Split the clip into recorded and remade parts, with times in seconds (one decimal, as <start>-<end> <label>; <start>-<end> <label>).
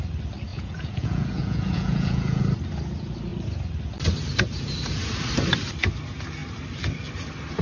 0.0-0.5 recorded; 0.5-2.4 remade; 2.4-7.6 recorded